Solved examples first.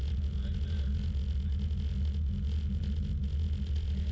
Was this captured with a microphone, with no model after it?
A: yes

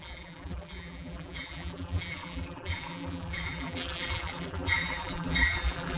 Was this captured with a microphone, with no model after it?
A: no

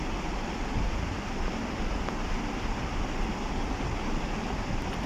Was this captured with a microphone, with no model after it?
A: yes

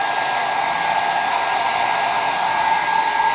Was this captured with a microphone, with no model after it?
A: yes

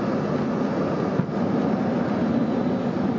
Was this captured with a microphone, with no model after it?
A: yes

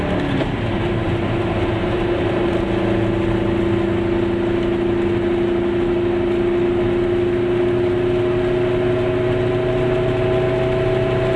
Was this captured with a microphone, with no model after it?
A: yes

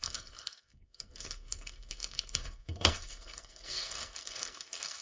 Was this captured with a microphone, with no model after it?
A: no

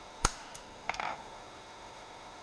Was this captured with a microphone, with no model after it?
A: no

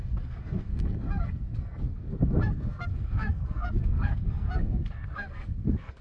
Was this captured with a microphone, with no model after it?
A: no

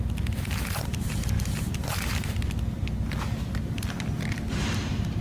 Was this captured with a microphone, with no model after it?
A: yes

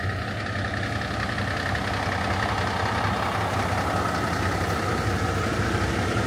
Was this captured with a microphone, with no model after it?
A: yes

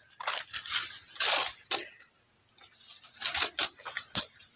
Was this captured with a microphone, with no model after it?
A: yes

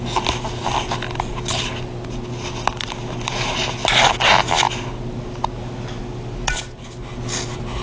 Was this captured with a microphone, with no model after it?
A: yes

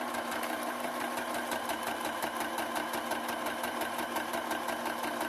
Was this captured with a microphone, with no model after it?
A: yes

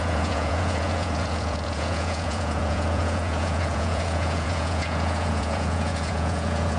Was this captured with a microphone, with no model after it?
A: no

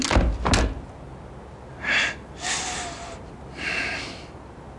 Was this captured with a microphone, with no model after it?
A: yes